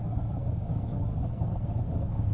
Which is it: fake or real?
fake